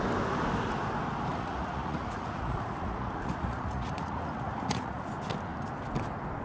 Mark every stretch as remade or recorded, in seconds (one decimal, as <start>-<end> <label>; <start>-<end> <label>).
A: 0.0-1.3 recorded; 1.3-5.1 remade; 5.1-6.4 recorded